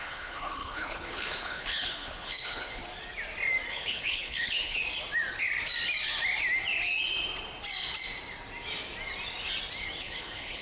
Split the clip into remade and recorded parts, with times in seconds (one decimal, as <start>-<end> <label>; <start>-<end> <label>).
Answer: 0.0-2.8 remade; 2.8-3.7 recorded; 3.7-4.8 remade; 4.8-10.0 recorded; 10.0-10.6 remade